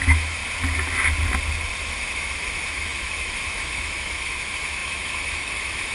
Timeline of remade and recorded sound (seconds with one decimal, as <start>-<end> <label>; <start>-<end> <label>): 0.0-0.4 remade; 0.4-1.8 recorded; 1.8-5.9 remade